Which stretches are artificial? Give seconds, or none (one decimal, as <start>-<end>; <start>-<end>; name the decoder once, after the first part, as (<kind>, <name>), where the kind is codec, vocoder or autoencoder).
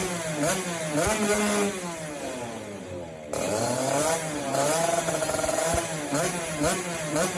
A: 2.2-7.4 (vocoder, BigVGAN v2)